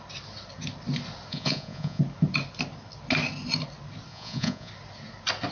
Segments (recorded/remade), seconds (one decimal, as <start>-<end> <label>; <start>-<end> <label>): 0.0-1.3 recorded; 1.3-2.0 remade; 2.0-4.1 recorded; 4.1-4.7 remade; 4.7-5.5 recorded